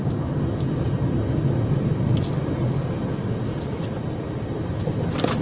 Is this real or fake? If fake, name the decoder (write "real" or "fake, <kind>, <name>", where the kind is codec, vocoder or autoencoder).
real